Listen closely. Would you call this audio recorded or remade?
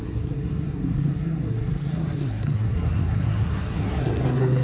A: remade